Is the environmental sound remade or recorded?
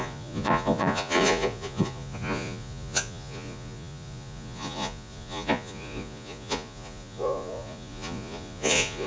remade